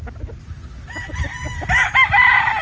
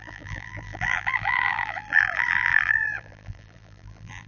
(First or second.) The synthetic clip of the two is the second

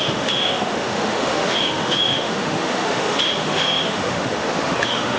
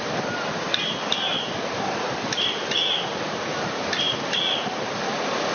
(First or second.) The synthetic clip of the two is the first